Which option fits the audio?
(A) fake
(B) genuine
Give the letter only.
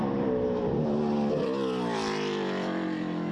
A